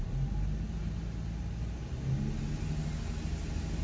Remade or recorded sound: recorded